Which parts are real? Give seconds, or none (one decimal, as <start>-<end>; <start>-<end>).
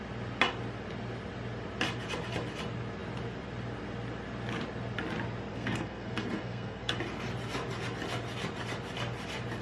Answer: 0.0-5.5; 6.9-9.6